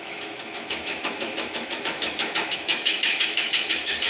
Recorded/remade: remade